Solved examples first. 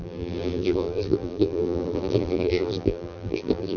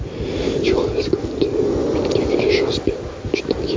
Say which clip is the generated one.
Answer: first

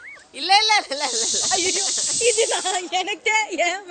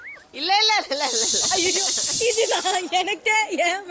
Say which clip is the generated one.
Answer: first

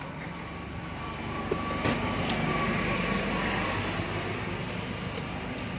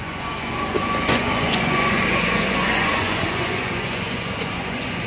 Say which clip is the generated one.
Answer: second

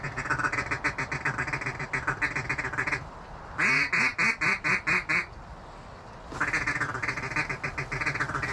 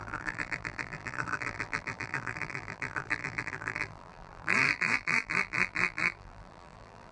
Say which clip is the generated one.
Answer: second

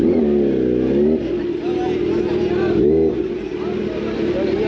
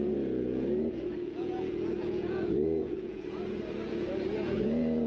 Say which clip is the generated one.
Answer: second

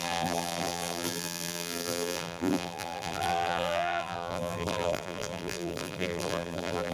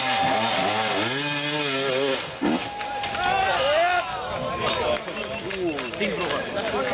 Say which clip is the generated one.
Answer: first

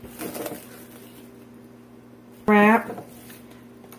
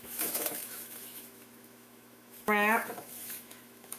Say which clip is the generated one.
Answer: second